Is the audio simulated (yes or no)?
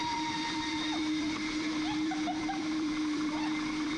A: yes